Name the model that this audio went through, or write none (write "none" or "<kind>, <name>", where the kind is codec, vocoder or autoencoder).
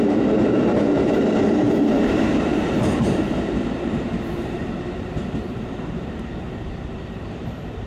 vocoder, BigVGAN v2